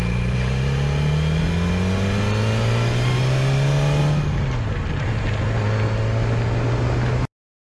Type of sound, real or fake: real